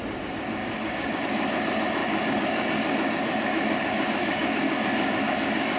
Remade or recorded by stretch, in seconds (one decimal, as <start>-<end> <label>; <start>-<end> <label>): 0.0-0.6 recorded; 0.6-1.2 remade; 1.2-2.0 recorded; 2.0-5.8 remade